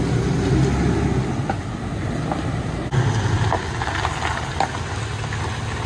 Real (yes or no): yes